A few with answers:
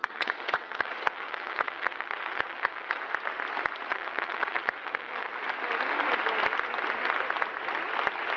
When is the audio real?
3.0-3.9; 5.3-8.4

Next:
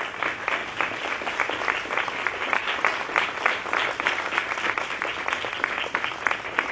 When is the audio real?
0.0-6.7